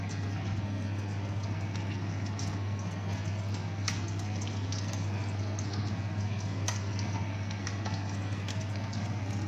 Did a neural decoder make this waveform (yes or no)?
yes